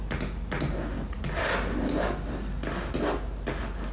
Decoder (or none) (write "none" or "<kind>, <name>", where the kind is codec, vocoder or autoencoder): none